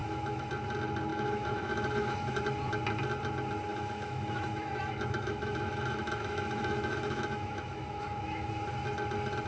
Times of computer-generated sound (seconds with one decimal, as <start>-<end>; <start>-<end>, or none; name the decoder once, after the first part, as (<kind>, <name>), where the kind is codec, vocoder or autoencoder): 0.0-0.5 (autoencoder, DAC-VAE); 1.1-2.4; 3.7-8.5